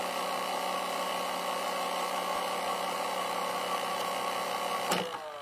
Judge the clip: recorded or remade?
recorded